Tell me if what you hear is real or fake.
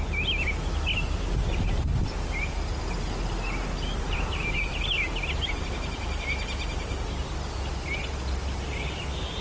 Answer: real